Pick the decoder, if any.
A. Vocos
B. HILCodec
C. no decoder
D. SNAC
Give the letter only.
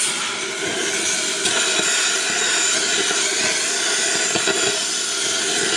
C